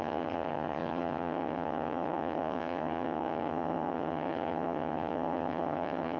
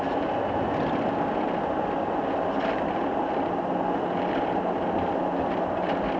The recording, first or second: second